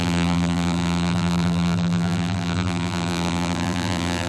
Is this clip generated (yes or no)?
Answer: yes